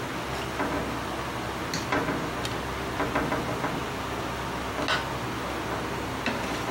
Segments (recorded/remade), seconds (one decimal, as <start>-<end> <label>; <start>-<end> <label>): 0.0-6.7 recorded